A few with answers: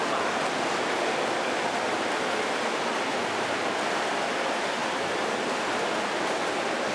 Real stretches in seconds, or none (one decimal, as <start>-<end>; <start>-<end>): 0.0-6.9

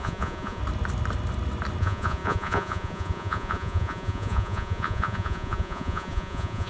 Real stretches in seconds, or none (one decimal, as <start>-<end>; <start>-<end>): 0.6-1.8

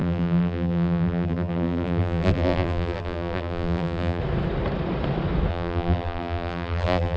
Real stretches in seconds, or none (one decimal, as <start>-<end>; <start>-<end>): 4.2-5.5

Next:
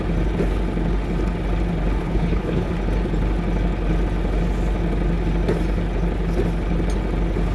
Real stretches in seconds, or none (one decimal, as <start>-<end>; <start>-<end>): 0.0-2.0; 2.7-7.5